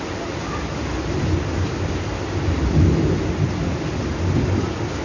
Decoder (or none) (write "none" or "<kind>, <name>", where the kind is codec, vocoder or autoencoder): none